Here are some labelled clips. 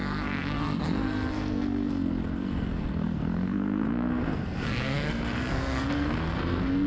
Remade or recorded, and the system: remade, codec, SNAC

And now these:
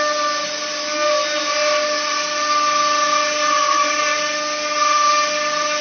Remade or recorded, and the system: recorded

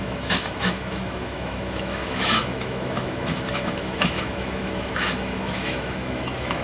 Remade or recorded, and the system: remade, autoencoder, DAC-VAE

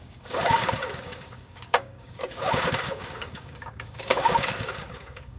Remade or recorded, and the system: remade, codec, DAC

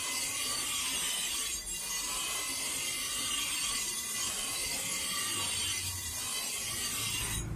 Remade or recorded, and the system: recorded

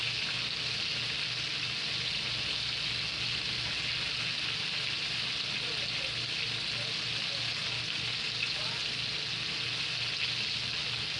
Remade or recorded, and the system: recorded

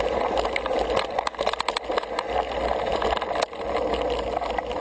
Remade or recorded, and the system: recorded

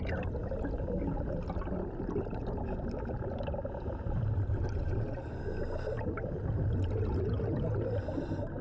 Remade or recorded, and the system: recorded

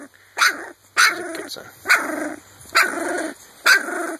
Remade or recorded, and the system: recorded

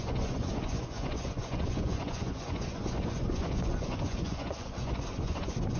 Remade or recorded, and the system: remade, vocoder, Vocos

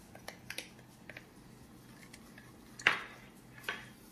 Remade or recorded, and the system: recorded